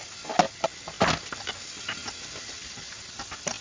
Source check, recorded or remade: recorded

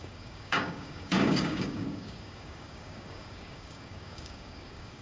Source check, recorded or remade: remade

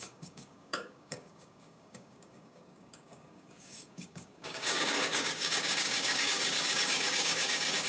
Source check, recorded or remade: remade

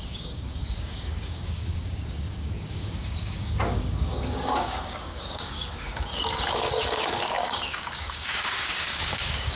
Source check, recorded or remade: remade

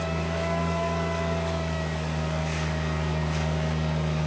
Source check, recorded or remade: remade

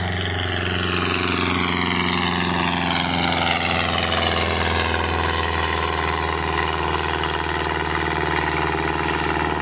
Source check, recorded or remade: recorded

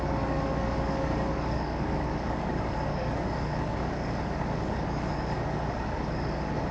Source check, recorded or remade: remade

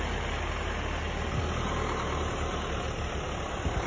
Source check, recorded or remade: recorded